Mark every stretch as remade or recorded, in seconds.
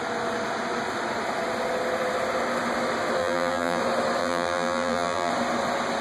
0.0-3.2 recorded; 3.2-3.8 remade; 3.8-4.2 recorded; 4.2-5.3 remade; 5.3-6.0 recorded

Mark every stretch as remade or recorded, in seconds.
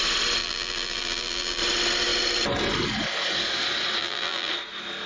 0.0-0.4 recorded; 0.4-1.6 remade; 1.6-4.0 recorded; 4.0-4.5 remade; 4.5-5.1 recorded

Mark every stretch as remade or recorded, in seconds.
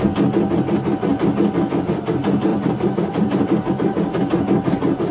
0.0-2.5 recorded; 2.5-3.7 remade; 3.7-5.1 recorded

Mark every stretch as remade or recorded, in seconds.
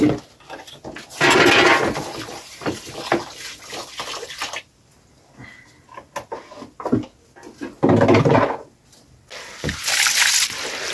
0.0-2.3 recorded; 2.3-2.9 remade; 2.9-10.9 recorded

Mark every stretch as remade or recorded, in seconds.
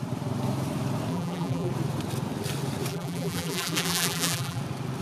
0.0-1.1 recorded; 1.1-1.7 remade; 1.7-2.9 recorded; 2.9-4.6 remade; 4.6-5.0 recorded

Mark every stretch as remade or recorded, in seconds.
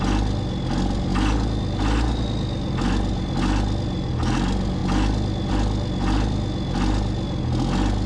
0.0-8.1 recorded